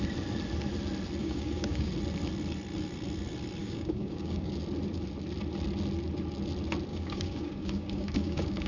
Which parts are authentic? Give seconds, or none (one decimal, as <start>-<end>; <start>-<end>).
0.0-1.2; 1.9-3.6; 4.5-6.9